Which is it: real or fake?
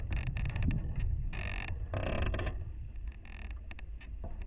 real